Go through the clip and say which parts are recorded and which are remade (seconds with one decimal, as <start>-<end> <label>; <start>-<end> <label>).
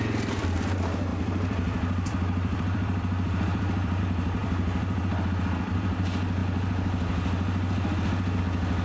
0.0-1.1 recorded; 1.1-4.0 remade; 4.0-4.4 recorded; 4.4-5.0 remade; 5.0-8.8 recorded